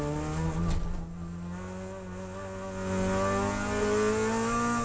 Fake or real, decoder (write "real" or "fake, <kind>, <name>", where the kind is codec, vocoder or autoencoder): real